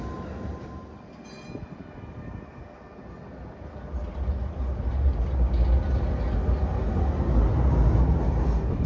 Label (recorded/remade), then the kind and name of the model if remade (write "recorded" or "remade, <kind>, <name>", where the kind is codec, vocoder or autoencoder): recorded